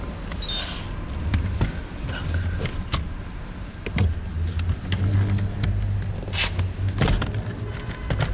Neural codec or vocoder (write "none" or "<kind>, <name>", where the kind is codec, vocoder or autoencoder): none